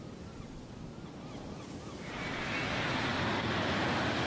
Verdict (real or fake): real